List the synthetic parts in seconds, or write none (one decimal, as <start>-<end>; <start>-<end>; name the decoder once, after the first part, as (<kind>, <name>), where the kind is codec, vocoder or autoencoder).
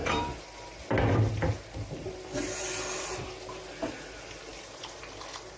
none